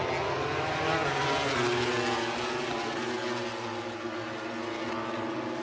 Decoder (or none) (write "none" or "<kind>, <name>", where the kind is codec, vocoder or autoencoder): none